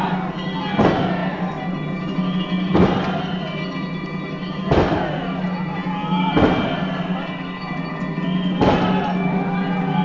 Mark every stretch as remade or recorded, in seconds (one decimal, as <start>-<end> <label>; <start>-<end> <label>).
0.0-10.0 recorded